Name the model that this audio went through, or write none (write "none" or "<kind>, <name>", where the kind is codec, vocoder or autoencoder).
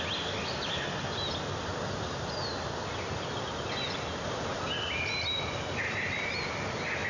none